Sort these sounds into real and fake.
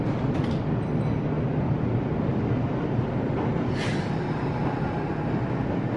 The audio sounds real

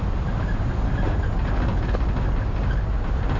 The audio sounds real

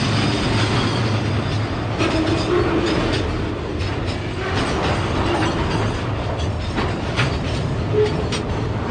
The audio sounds real